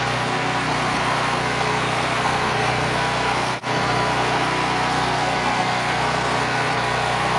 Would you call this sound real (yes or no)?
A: no